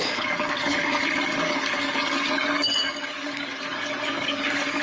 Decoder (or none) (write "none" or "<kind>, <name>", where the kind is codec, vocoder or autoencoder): codec, DAC